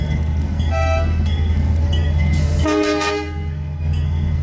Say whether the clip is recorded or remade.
remade